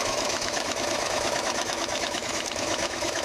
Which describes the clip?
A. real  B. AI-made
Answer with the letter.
B